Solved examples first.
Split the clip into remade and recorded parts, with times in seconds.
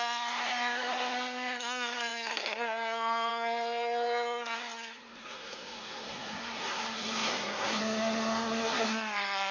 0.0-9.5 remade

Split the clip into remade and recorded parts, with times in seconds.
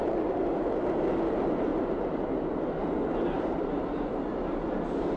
0.0-1.7 recorded; 1.7-2.3 remade; 2.3-5.2 recorded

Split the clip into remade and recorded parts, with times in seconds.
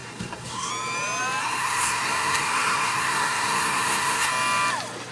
0.0-0.7 remade; 0.7-1.4 recorded; 1.4-4.3 remade; 4.3-5.1 recorded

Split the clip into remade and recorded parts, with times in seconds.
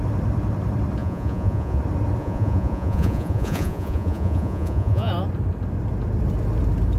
0.0-1.0 recorded; 1.0-1.8 remade; 1.8-2.2 recorded; 2.2-5.1 remade; 5.1-7.0 recorded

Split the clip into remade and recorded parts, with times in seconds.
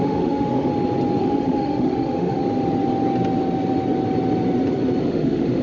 0.0-0.7 remade; 0.7-1.2 recorded; 1.2-2.4 remade; 2.4-5.0 recorded; 5.0-5.6 remade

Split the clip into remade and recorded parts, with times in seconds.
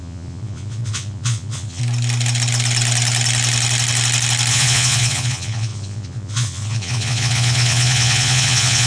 0.0-1.8 remade; 1.8-4.5 recorded; 4.5-8.9 remade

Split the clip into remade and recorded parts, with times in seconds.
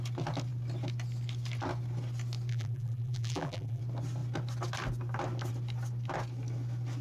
0.0-2.5 recorded; 2.5-3.8 remade; 3.8-7.0 recorded